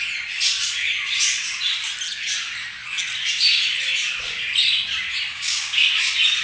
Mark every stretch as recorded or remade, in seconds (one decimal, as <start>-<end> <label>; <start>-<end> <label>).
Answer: 0.0-5.3 recorded; 5.3-5.9 remade; 5.9-6.4 recorded